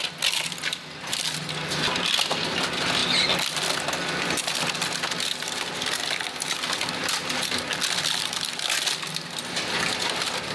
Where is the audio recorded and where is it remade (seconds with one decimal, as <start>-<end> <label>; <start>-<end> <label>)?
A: 0.0-10.5 recorded